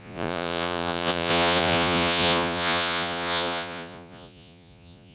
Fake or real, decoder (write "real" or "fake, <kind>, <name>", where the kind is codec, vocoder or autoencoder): fake, vocoder, Vocos